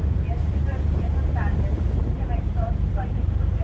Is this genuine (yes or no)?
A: no